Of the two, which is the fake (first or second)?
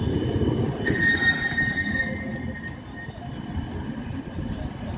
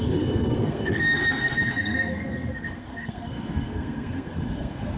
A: second